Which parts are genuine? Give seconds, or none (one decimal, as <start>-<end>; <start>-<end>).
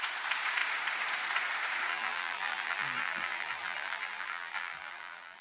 0.0-1.9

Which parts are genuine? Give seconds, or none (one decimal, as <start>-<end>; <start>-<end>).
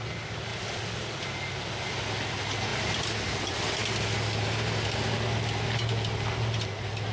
0.0-7.1